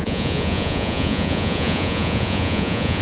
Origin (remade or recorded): remade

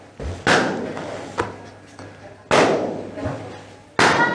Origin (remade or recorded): recorded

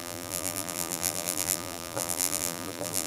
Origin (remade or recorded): remade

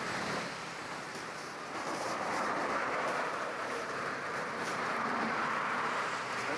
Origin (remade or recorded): remade